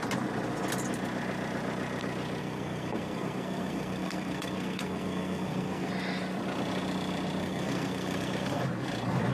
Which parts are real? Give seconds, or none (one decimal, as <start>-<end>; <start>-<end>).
0.0-2.4; 5.9-7.4; 8.6-9.3